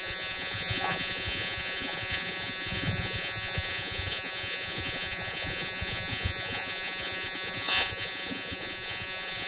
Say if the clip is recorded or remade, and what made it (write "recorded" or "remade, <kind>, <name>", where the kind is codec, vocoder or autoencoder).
remade, vocoder, Vocos